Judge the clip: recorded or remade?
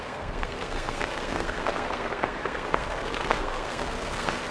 remade